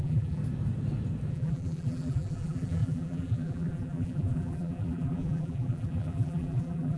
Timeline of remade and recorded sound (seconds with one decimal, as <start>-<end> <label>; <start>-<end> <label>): 0.0-0.4 remade; 0.4-1.3 recorded; 1.3-7.0 remade